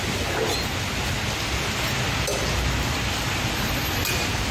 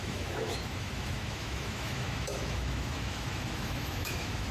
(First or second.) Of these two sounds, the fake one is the second